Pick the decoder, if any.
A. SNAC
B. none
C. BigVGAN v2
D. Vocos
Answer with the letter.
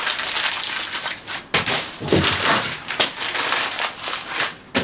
B